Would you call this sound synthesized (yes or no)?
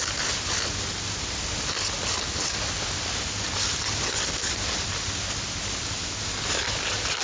no